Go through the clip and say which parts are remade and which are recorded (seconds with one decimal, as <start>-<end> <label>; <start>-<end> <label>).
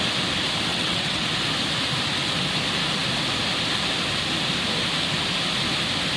0.0-0.7 recorded; 0.7-1.3 remade; 1.3-6.2 recorded